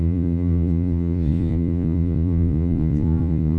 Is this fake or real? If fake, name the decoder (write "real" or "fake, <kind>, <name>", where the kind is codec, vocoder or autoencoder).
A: fake, vocoder, Vocos